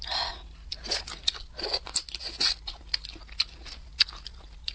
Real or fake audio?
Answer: real